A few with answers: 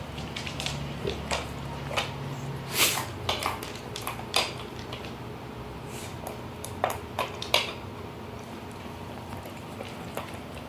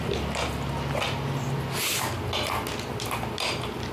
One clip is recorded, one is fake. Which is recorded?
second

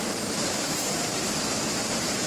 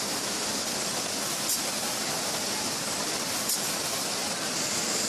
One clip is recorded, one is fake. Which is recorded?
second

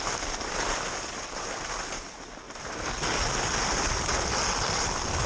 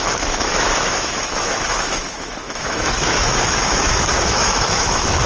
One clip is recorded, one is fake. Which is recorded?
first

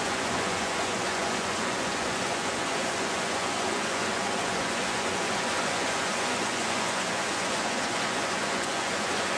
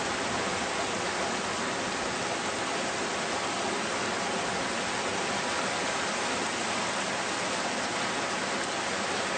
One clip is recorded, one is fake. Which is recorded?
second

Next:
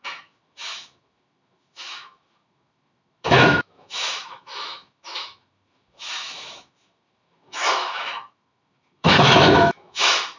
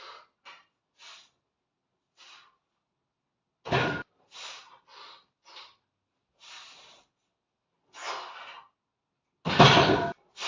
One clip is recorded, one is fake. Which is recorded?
second